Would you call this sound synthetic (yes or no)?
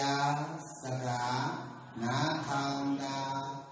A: no